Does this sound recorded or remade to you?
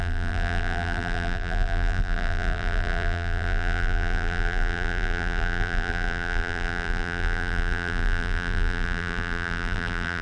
remade